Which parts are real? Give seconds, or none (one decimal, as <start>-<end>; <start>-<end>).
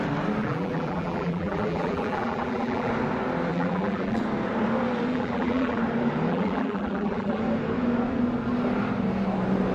0.0-0.4; 2.9-3.5; 4.2-5.1; 5.8-6.3; 7.4-9.7